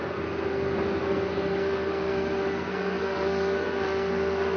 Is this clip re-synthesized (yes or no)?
yes